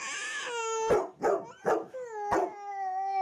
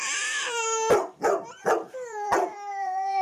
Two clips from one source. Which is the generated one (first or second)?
second